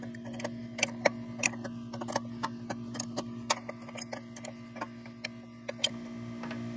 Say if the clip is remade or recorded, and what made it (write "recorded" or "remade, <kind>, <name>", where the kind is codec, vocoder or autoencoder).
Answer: recorded